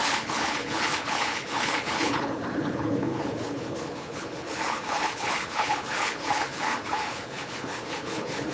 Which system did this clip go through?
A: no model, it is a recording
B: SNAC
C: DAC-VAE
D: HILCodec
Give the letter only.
D